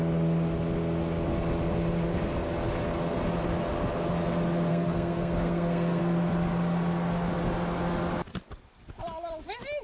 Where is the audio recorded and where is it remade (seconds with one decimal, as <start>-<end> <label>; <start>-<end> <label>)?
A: 0.0-4.7 recorded; 4.7-6.0 remade; 6.0-9.8 recorded